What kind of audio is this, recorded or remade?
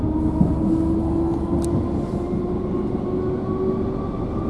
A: recorded